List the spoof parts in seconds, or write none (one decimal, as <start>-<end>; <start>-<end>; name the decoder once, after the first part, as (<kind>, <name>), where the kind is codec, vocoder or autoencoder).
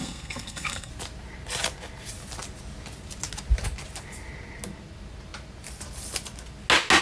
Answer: 0.0-0.9 (codec, SNAC)